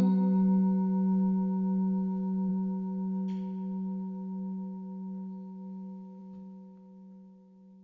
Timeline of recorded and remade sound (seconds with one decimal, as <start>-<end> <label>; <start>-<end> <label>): 0.0-7.8 recorded